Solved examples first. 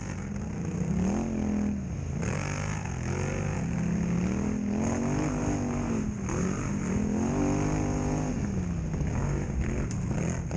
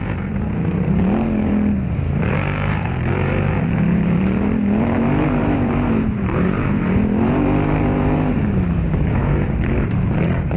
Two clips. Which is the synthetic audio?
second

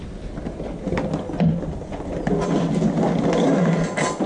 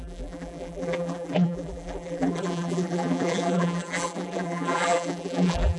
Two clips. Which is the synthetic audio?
second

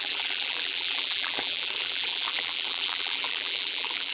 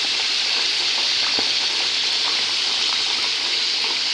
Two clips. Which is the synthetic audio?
first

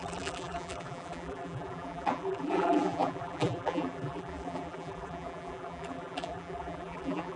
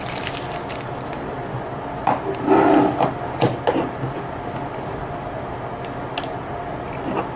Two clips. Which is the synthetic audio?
first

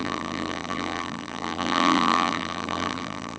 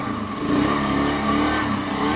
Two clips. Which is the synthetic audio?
first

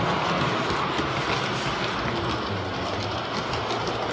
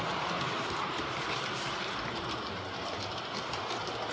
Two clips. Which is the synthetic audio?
second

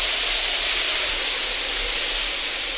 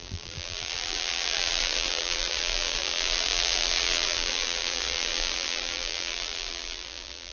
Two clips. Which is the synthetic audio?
second